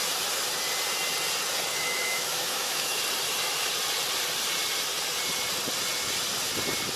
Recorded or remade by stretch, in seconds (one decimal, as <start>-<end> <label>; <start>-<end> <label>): 0.0-1.7 recorded; 1.7-3.0 remade; 3.0-7.0 recorded